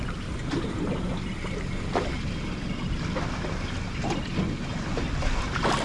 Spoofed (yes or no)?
no